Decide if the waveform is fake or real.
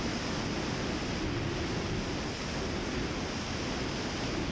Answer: real